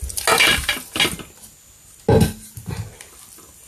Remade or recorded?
recorded